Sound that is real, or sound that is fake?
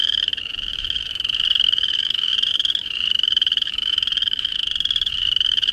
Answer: fake